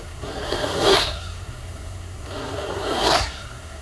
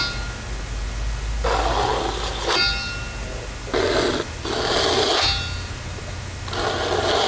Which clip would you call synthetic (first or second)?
first